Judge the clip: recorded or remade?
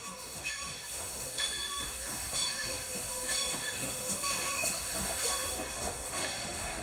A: remade